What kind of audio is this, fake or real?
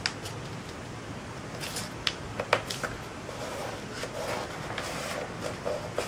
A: real